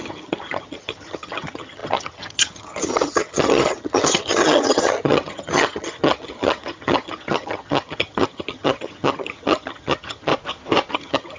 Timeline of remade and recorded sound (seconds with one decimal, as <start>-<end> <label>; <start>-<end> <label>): 0.0-10.3 remade; 10.3-10.9 recorded; 10.9-11.4 remade